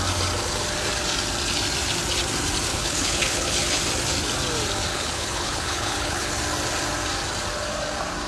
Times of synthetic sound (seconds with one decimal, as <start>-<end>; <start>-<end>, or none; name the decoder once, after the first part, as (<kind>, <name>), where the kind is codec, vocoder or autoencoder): 2.7-3.8 (codec, HILCodec); 4.9-6.3